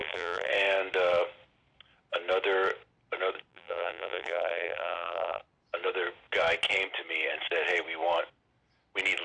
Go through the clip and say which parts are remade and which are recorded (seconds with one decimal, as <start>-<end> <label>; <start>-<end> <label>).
0.0-0.5 remade; 0.5-3.5 recorded; 3.5-5.4 remade; 5.4-9.2 recorded